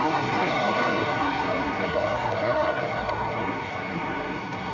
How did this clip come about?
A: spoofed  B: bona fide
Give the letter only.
A